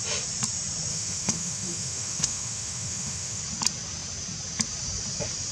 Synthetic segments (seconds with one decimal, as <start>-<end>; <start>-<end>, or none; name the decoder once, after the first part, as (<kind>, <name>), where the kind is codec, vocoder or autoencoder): 0.9-3.4 (autoencoder, DAC-VAE)